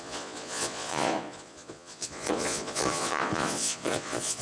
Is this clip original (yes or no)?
no